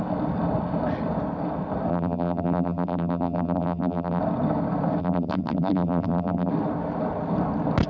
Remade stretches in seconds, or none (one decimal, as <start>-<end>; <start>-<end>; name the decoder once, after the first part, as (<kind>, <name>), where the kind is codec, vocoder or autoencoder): 1.9-4.2 (vocoder, BigVGAN v2); 5.0-6.5